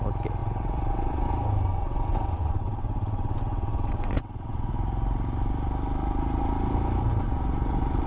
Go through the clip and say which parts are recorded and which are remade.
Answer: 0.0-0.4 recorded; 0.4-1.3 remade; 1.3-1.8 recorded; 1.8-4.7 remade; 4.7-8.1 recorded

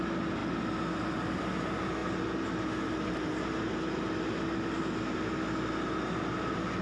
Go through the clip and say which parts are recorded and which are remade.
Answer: 0.0-6.8 recorded

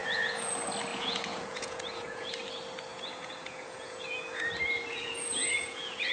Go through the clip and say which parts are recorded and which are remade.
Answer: 0.0-0.5 remade; 0.5-0.9 recorded; 0.9-2.3 remade; 2.3-2.9 recorded; 2.9-4.5 remade; 4.5-4.9 recorded; 4.9-6.1 remade

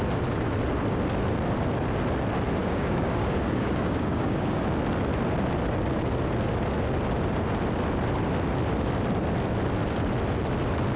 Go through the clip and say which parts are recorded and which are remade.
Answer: 0.0-2.6 recorded; 2.6-4.6 remade; 4.6-11.0 recorded

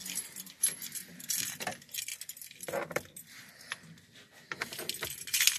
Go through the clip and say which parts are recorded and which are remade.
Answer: 0.0-2.1 remade; 2.1-5.6 recorded

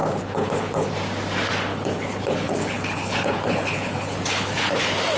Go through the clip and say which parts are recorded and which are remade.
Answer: 0.0-0.9 remade; 0.9-1.7 recorded; 1.7-4.8 remade; 4.8-5.2 recorded

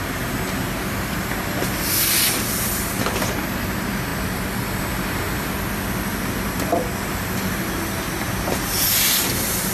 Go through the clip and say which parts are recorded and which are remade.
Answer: 0.0-9.7 recorded